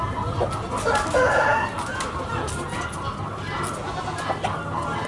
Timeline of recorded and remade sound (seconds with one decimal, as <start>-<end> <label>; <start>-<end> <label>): 0.0-5.1 recorded